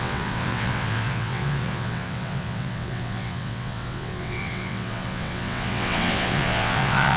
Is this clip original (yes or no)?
no